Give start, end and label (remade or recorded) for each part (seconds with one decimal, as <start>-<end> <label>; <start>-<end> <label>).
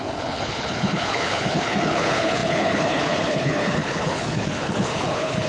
0.0-5.5 remade